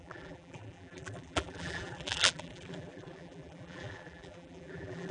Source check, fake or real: fake